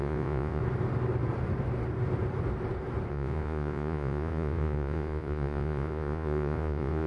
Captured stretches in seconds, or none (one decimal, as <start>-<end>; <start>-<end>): 0.6-3.1